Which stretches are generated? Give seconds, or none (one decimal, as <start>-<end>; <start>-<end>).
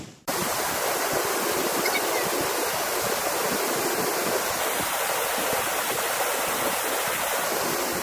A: 0.4-1.5; 2.6-3.4; 4.2-5.4